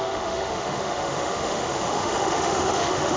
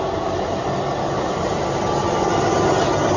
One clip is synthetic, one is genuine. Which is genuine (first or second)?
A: second